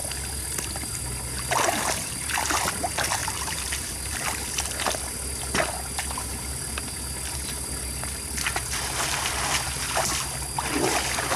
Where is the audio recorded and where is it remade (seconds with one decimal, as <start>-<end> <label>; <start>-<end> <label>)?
0.0-3.2 recorded; 3.2-4.7 remade; 4.7-11.4 recorded